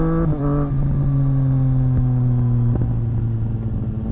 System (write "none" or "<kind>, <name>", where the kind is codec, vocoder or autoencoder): none